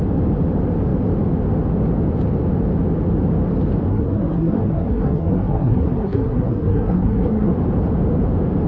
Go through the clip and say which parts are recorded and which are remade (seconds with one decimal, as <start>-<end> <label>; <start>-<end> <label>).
0.0-3.9 recorded; 3.9-7.5 remade; 7.5-8.7 recorded